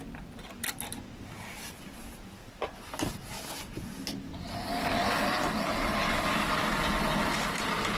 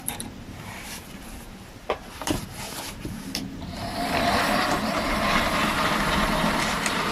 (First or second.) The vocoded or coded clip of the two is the second